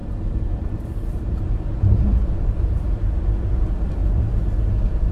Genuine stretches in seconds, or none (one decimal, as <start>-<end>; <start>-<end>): 4.0-4.6